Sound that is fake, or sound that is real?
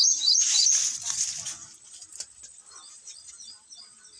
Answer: real